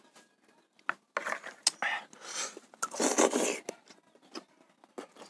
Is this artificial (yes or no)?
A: no